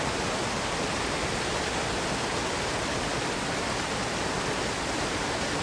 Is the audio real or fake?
real